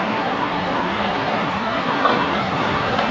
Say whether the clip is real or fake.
fake